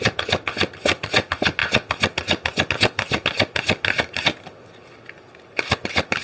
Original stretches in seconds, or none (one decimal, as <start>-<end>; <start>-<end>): 0.0-6.2